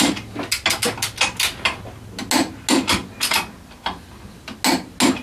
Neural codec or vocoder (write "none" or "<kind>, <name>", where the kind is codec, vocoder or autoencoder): none